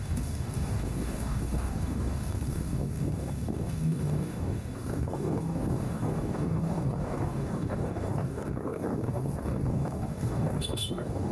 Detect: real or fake fake